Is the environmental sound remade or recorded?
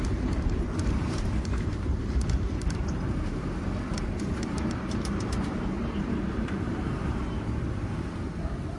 remade